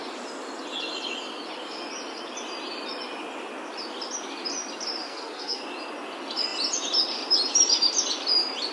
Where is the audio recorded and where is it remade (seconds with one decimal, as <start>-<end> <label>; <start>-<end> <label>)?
0.0-5.0 recorded; 5.0-5.6 remade; 5.6-8.7 recorded